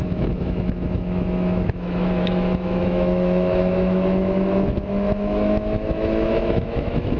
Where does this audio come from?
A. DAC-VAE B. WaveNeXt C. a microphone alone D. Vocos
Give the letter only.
A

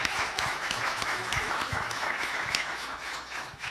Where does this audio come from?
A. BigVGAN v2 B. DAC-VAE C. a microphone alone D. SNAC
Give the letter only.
B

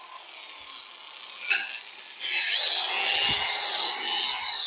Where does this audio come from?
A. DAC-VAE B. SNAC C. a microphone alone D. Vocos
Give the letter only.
C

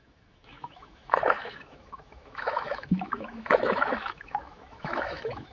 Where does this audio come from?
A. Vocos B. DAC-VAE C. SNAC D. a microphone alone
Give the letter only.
B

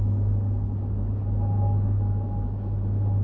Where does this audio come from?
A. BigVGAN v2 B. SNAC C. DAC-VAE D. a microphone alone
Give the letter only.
C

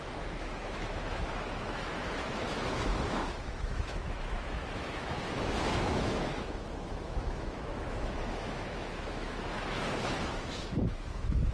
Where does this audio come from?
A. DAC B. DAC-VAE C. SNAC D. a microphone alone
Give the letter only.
B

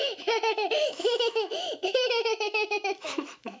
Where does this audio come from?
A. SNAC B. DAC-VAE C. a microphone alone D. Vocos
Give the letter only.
B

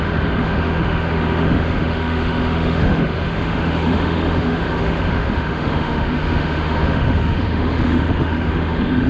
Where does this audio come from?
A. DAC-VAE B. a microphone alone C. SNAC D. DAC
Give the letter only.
A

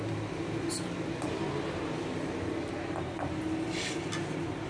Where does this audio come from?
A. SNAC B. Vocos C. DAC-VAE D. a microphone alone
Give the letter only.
D